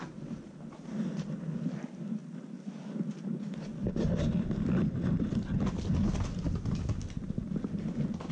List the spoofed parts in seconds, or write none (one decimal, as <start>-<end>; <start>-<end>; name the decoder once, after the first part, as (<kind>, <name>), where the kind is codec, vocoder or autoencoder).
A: none